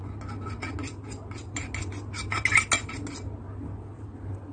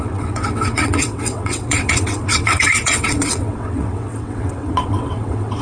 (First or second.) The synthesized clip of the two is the second